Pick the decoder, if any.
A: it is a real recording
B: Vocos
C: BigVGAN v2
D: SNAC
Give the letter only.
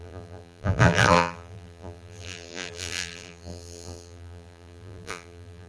C